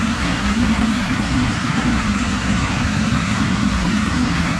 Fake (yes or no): yes